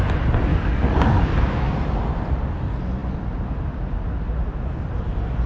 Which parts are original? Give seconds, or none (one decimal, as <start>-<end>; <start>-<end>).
0.0-0.5; 1.3-5.5